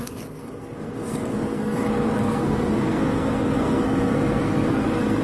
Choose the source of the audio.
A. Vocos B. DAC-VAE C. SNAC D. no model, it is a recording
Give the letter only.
C